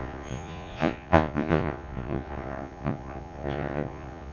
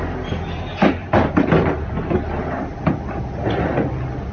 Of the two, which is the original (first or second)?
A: second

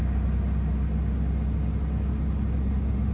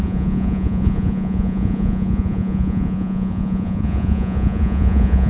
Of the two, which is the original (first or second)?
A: first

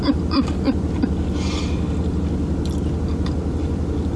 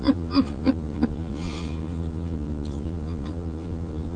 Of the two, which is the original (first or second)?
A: first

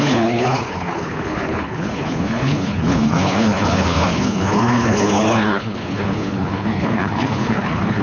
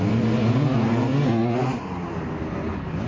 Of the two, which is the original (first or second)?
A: second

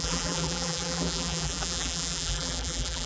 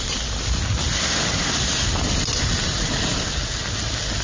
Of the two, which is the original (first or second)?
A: second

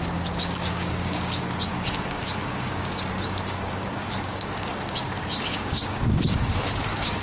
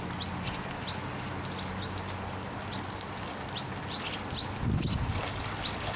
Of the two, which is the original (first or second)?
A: second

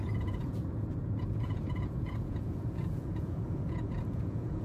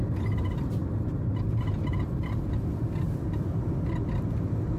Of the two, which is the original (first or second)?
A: second